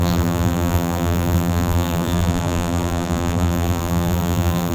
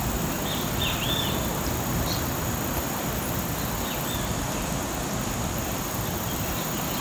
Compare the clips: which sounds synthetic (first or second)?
first